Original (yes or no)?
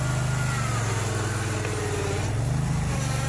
yes